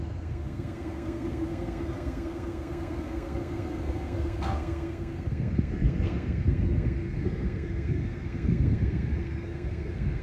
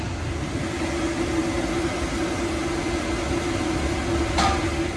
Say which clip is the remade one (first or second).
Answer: first